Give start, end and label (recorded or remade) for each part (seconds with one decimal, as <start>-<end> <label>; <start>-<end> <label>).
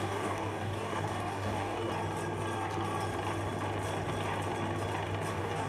0.0-1.9 remade; 1.9-5.3 recorded; 5.3-5.7 remade